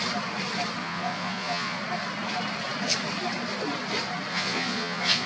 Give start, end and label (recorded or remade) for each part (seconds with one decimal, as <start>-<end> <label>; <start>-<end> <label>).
0.0-0.8 recorded; 0.8-1.8 remade; 1.8-4.3 recorded; 4.3-5.3 remade